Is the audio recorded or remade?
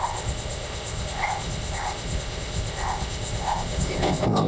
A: remade